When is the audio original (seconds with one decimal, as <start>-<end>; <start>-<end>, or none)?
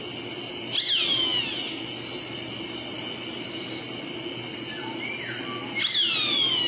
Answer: 0.0-6.7